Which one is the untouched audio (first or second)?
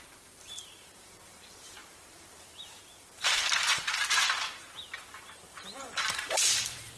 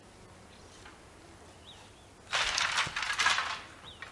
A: second